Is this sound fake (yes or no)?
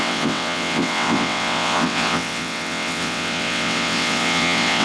yes